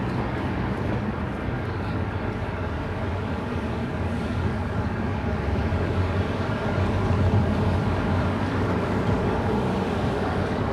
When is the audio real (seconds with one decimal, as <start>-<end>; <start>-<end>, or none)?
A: none